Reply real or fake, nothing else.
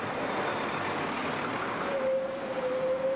real